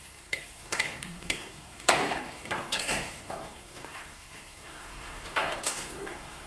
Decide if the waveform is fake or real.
fake